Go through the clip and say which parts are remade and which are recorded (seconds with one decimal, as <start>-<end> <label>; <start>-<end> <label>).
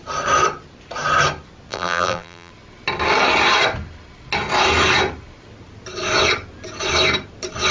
0.0-1.7 recorded; 1.7-2.5 remade; 2.5-7.7 recorded